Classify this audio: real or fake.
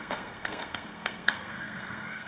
fake